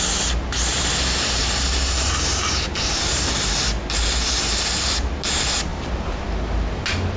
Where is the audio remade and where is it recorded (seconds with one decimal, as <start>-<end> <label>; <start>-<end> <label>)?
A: 0.0-0.7 recorded; 0.7-3.5 remade; 3.5-5.7 recorded; 5.7-6.2 remade; 6.2-7.2 recorded